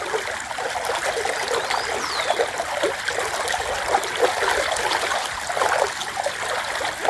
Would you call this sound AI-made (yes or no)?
no